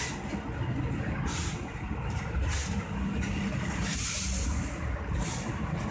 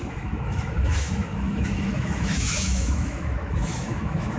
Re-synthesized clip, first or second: second